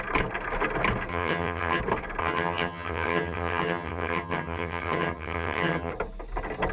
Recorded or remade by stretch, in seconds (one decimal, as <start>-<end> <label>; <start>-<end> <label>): 0.0-1.1 recorded; 1.1-1.8 remade; 1.8-2.2 recorded; 2.2-5.9 remade; 5.9-6.7 recorded